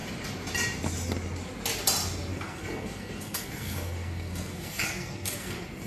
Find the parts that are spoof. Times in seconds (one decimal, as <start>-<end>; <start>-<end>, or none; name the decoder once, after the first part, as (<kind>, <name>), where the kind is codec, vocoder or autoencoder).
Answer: 2.3-5.9 (codec, SNAC)